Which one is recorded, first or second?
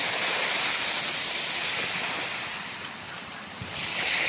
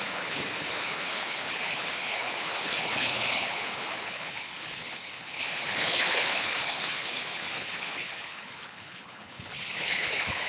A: first